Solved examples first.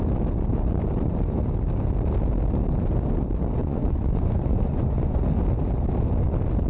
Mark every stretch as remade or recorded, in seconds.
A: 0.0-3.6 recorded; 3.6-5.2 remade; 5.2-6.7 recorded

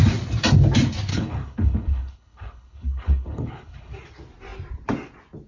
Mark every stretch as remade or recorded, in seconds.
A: 0.0-1.1 recorded; 1.1-3.9 remade; 3.9-5.5 recorded

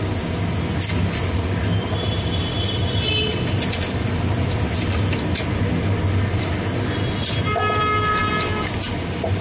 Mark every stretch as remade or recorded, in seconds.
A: 0.0-9.4 recorded

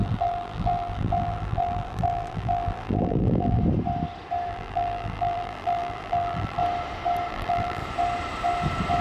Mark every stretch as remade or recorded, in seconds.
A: 0.0-3.6 remade; 3.6-4.5 recorded; 4.5-6.6 remade; 6.6-7.3 recorded; 7.3-7.8 remade; 7.8-9.0 recorded

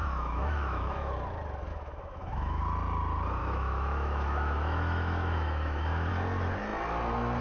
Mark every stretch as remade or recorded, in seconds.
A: 0.0-1.1 remade; 1.1-1.7 recorded; 1.7-2.6 remade; 2.6-3.4 recorded; 3.4-6.1 remade; 6.1-7.4 recorded

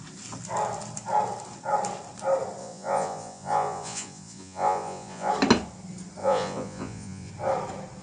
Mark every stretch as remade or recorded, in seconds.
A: 0.0-2.6 recorded; 2.6-5.3 remade; 5.3-6.2 recorded; 6.2-7.3 remade; 7.3-8.0 recorded